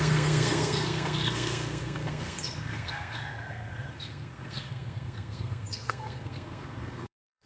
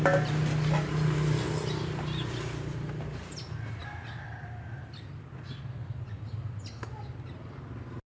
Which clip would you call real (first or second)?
second